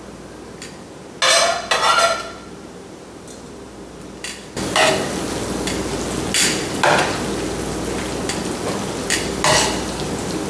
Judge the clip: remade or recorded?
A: recorded